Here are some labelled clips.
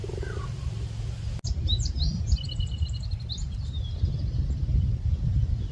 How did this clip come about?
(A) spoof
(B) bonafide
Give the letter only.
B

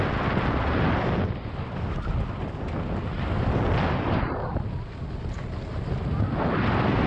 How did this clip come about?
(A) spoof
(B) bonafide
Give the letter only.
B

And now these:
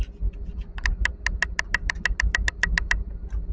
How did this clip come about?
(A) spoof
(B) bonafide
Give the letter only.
B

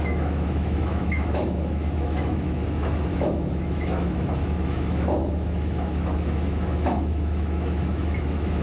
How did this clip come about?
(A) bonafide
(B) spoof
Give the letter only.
B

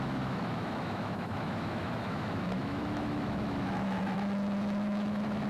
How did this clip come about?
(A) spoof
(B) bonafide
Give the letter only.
A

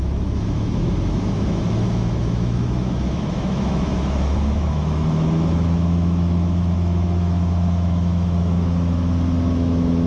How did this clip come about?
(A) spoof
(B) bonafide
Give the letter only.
A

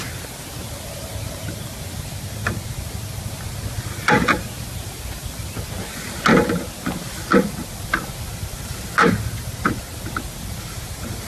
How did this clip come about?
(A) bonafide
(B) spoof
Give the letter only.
A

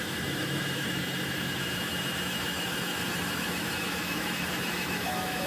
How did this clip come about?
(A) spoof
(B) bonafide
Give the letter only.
A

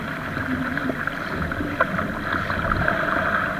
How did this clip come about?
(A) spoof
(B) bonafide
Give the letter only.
B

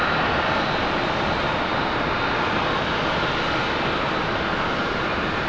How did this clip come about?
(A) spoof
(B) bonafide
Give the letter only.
B